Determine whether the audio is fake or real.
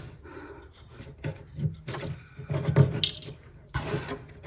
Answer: real